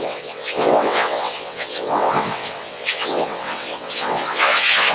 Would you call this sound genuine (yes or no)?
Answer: no